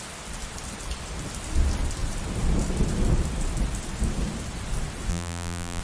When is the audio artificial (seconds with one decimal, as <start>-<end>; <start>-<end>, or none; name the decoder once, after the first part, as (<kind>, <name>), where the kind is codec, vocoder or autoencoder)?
5.1-5.8 (vocoder, BigVGAN v2)